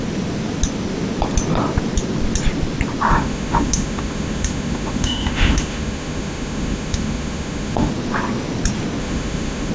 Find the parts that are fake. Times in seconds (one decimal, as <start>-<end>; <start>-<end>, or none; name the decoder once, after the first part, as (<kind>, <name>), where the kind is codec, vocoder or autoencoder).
3.1-7.9 (autoencoder, DAC-VAE); 9.0-9.7